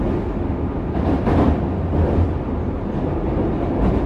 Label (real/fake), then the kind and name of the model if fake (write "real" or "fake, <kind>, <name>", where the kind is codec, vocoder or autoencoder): real